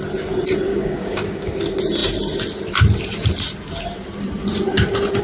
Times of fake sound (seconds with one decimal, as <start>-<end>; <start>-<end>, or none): 0.7-1.6